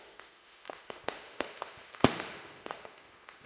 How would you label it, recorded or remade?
remade